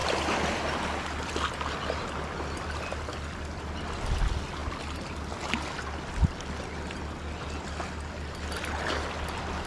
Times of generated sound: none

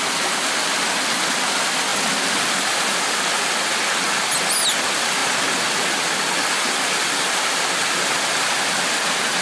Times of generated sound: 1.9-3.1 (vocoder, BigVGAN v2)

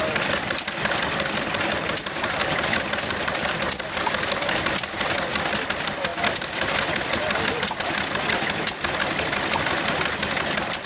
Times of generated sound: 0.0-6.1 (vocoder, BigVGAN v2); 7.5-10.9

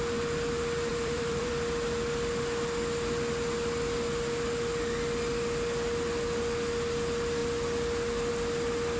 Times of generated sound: 0.9-1.5 (vocoder, BigVGAN v2)

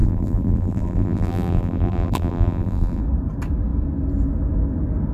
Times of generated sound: 0.0-3.0 (vocoder, BigVGAN v2)

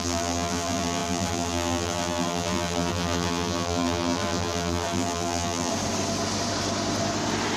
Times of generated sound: 0.0-5.7 (vocoder, BigVGAN v2)